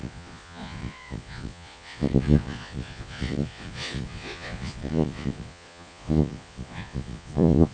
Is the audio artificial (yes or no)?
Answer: yes